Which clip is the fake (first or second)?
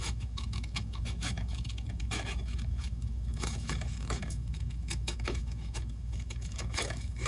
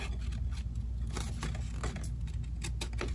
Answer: first